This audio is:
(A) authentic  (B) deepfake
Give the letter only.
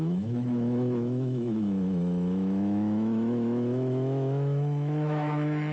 B